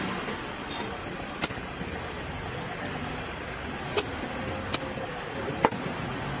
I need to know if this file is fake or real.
real